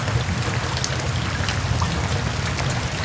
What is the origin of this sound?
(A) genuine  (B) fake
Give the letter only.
A